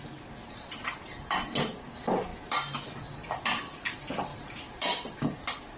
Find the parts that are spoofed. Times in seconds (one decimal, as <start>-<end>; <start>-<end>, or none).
0.4-0.9; 4.3-5.8